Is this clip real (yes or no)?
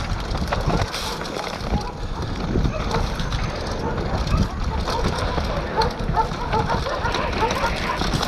yes